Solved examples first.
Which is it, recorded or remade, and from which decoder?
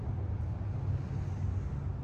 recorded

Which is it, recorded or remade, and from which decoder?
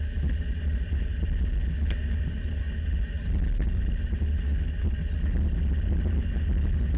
recorded